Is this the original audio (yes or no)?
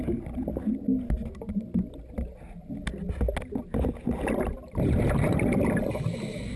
yes